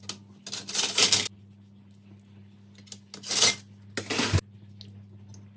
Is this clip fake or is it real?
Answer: real